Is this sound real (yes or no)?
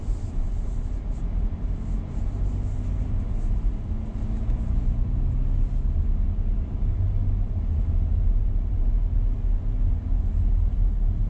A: yes